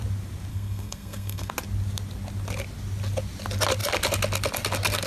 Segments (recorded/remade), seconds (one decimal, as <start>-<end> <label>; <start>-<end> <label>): 0.0-0.5 recorded; 0.5-1.5 remade; 1.5-5.1 recorded